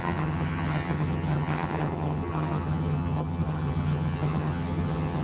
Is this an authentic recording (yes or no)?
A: no